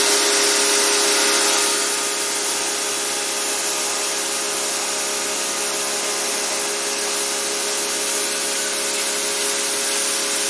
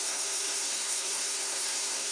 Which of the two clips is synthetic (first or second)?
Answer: second